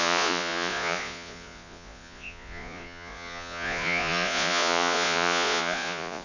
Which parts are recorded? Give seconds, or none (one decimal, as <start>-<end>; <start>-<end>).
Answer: none